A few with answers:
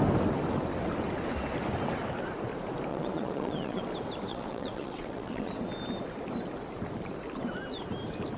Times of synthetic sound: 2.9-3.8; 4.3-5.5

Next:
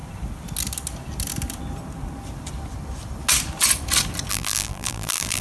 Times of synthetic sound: 4.3-5.4

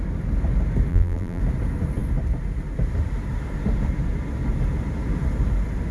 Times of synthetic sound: 0.9-1.4

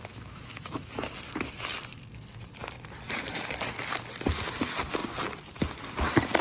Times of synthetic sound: 0.0-1.0

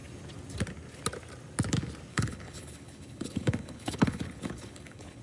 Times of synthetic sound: 2.1-5.2